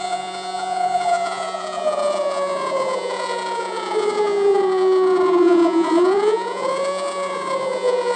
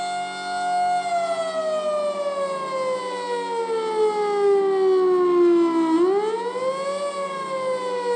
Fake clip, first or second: first